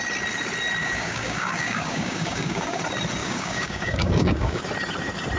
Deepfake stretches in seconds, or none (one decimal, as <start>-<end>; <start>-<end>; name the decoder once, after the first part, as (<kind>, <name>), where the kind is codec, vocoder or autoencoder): 0.8-2.8 (codec, DAC); 3.2-4.6